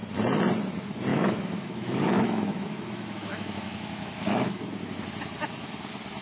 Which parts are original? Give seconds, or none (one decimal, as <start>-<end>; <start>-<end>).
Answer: 0.0-1.1; 4.7-6.2